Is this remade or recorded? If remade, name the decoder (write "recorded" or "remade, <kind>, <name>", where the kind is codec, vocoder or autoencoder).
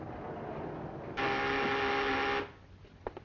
recorded